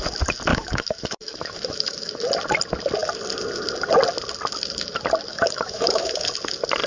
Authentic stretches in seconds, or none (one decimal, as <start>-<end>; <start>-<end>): 0.0-0.5; 2.1-5.3; 6.3-6.9